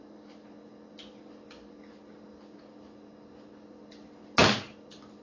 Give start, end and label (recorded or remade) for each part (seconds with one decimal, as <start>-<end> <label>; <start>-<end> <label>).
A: 0.0-5.2 recorded